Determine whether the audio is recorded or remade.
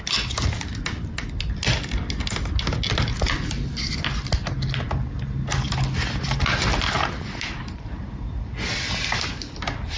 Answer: recorded